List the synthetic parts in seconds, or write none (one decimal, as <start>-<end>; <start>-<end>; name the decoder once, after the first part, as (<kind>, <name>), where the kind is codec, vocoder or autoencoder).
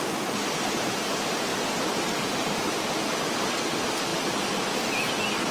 none